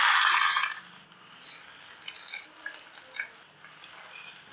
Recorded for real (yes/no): yes